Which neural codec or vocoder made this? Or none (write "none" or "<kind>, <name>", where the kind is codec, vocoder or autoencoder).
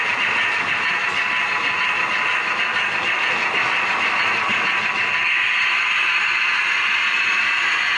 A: none